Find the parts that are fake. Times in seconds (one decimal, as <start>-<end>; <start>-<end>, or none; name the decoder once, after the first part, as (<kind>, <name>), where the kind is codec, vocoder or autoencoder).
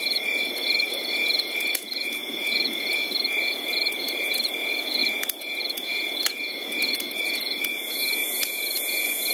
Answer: 0.0-9.3 (vocoder, Vocos)